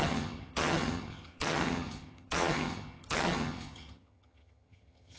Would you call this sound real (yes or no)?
no